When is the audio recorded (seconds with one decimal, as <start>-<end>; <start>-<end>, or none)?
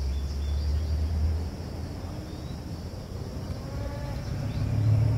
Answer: 0.0-0.7; 1.3-1.8; 4.6-5.2